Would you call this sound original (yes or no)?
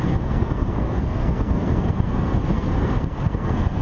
no